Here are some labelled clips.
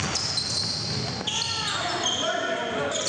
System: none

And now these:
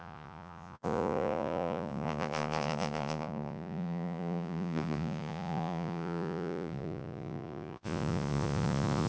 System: vocoder, Vocos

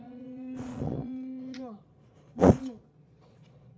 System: vocoder, Vocos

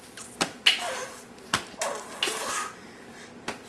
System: none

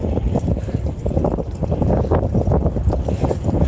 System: none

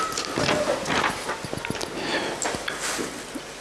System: none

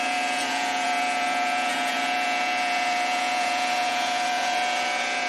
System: vocoder, Vocos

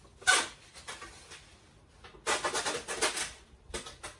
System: none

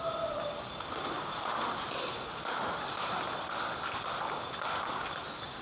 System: none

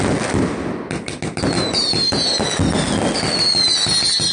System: none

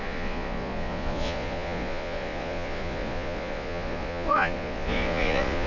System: vocoder, Vocos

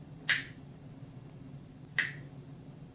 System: none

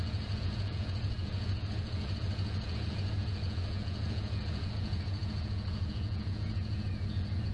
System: vocoder, Vocos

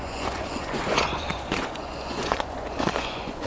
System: vocoder, Vocos